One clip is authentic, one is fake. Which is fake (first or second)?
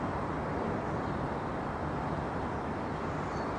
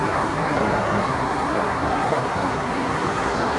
second